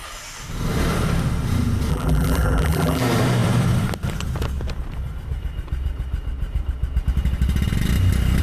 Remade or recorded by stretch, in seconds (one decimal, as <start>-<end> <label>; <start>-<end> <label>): 0.0-1.9 recorded; 1.9-3.0 remade; 3.0-8.4 recorded

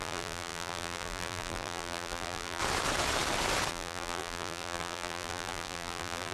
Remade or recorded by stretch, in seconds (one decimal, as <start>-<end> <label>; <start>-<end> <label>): 0.0-2.6 remade; 2.6-3.7 recorded; 3.7-6.3 remade

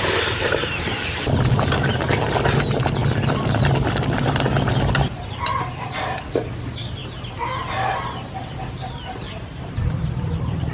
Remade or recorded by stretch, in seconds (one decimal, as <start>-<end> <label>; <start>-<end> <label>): 0.0-1.9 remade; 1.9-5.7 recorded; 5.7-7.0 remade; 7.0-9.7 recorded; 9.7-10.7 remade

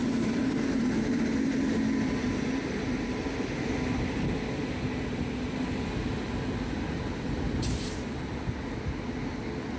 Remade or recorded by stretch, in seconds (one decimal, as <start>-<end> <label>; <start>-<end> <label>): 0.0-1.2 remade; 1.2-9.8 recorded

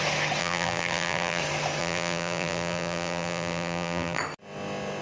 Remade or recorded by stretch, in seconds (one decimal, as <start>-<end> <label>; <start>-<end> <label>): 0.0-0.4 recorded; 0.4-1.4 remade; 1.4-1.8 recorded; 1.8-4.2 remade; 4.2-5.0 recorded

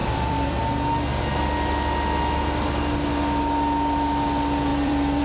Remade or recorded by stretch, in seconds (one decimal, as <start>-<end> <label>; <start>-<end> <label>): 0.0-0.6 remade; 0.6-4.7 recorded; 4.7-5.2 remade